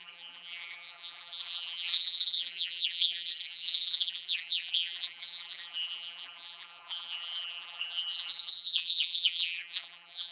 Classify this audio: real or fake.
fake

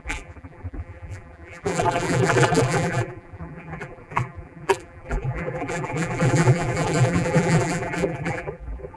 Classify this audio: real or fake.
fake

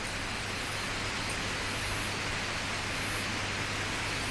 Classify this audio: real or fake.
real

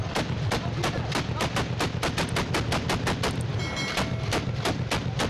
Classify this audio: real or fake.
real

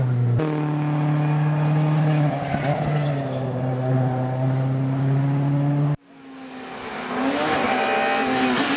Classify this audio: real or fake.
real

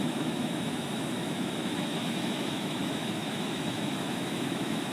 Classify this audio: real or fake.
fake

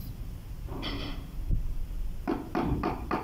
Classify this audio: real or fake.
real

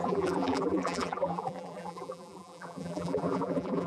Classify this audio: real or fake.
fake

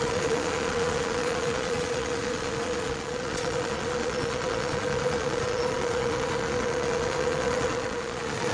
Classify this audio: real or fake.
fake